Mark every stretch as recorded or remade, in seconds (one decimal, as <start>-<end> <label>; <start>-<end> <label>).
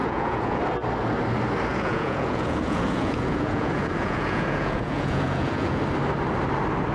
0.0-0.6 remade; 0.6-1.7 recorded; 1.7-5.8 remade; 5.8-6.9 recorded